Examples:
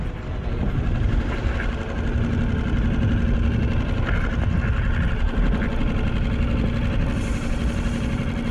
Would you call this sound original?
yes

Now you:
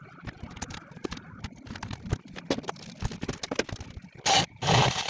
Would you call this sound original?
yes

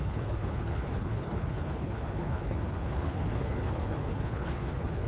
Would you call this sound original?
no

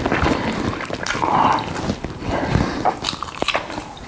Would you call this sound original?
yes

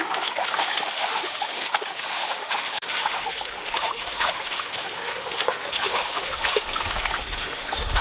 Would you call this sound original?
no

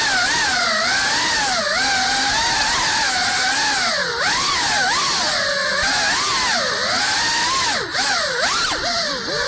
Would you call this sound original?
yes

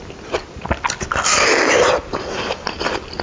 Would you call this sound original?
yes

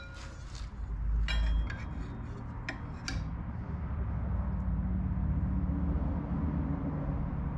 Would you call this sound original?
yes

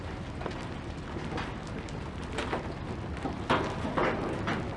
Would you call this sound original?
yes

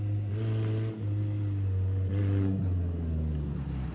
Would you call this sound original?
yes